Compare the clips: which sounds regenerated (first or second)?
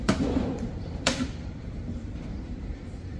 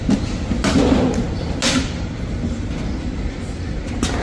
first